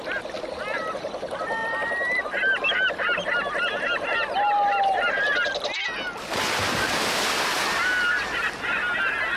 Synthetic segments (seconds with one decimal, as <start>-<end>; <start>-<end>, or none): 1.6-2.2